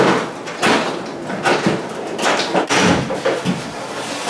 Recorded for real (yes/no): yes